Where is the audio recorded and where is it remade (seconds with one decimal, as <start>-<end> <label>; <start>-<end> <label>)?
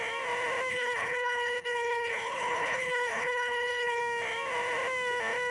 0.0-0.7 recorded; 0.7-4.0 remade; 4.0-5.5 recorded